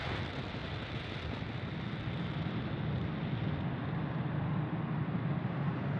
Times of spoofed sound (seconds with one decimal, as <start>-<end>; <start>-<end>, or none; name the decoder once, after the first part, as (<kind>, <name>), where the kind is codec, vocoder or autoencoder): none

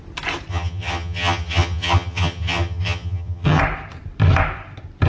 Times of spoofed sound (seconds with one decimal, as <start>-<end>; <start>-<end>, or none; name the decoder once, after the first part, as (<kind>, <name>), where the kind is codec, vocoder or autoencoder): 0.5-3.6 (vocoder, HiFi-GAN)

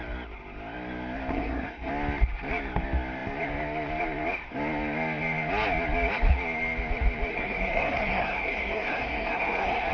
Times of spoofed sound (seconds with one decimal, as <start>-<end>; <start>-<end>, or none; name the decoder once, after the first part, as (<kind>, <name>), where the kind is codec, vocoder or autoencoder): 1.3-1.9 (codec, SNAC); 7.3-9.9

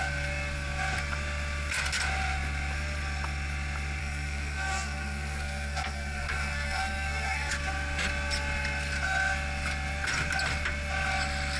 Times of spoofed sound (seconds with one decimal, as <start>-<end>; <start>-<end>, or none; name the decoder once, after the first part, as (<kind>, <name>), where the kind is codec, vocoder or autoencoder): 4.0-7.5 (codec, SNAC)

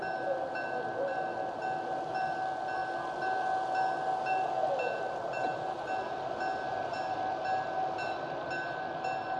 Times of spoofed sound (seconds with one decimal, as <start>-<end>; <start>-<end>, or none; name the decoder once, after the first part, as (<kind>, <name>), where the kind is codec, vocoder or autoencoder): none

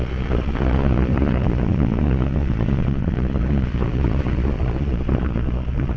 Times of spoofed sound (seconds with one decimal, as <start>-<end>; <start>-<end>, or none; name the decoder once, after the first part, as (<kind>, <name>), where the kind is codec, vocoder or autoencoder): 0.0-6.0 (vocoder, Vocos)

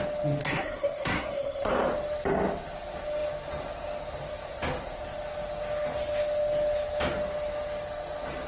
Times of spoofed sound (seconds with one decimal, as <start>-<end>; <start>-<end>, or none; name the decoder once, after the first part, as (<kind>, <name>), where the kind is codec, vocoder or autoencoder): 0.4-1.7 (codec, SNAC)